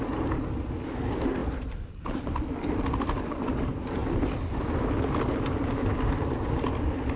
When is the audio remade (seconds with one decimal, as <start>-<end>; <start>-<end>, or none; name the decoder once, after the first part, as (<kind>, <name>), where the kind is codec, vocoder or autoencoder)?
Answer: none